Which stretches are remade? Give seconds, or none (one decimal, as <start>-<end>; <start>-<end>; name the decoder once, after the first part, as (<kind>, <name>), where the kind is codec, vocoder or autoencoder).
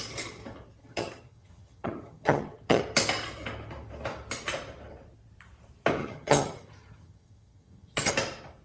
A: 0.8-2.8 (vocoder, HiFi-GAN); 6.0-8.1